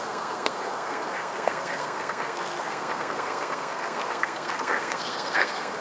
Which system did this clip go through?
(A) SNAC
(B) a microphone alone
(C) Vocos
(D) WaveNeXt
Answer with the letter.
A